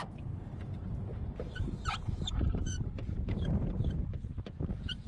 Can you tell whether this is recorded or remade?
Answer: remade